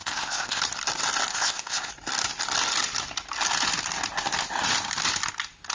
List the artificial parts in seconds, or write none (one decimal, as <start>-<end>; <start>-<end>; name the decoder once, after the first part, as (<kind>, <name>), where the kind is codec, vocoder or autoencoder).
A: 0.0-0.6 (codec, ZipCodec); 1.3-1.9